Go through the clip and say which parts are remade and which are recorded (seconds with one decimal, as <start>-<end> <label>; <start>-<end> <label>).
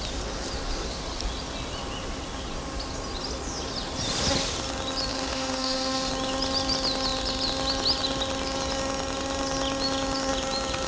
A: 0.0-5.1 recorded; 5.1-6.1 remade; 6.1-10.9 recorded